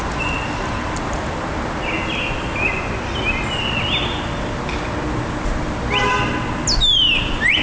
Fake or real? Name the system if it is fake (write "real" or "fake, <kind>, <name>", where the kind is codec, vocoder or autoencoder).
real